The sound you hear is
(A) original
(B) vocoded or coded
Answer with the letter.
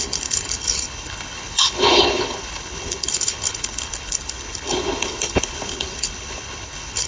B